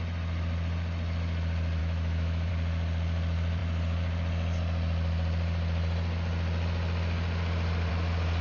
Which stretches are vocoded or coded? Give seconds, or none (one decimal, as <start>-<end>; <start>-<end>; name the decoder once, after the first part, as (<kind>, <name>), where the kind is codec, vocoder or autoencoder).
1.8-2.5 (autoencoder, DAC-VAE)